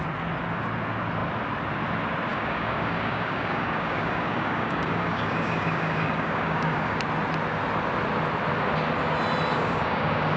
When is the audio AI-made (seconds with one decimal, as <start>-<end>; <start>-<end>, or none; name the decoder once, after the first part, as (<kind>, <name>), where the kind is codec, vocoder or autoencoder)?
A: 2.3-7.0 (codec, DAC); 9.5-10.4